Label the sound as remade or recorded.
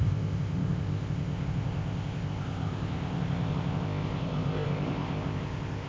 remade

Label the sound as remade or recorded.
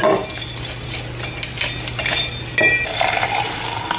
recorded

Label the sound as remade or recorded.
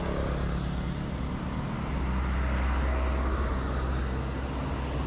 recorded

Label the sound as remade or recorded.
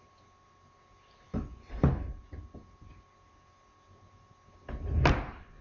recorded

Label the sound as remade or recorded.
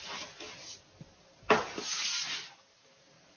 recorded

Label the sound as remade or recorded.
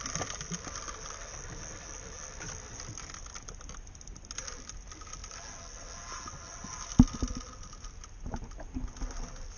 recorded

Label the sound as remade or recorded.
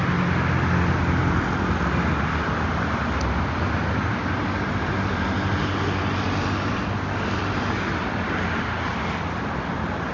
recorded